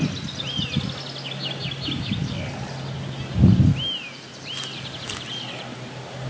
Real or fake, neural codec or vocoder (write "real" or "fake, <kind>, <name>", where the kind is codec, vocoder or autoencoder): real